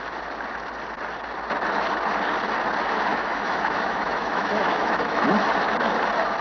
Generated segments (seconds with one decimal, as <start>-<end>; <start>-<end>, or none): 3.1-5.3